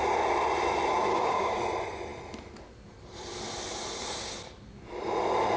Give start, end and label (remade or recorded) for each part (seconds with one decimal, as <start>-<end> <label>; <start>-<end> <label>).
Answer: 0.0-1.1 recorded; 1.1-1.6 remade; 1.6-5.6 recorded